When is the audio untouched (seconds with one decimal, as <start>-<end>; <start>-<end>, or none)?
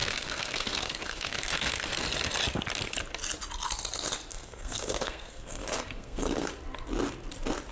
1.8-4.3; 6.5-7.7